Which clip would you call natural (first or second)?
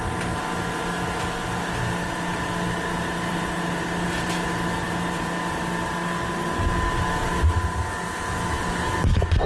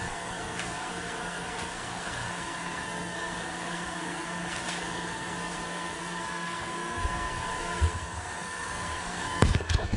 first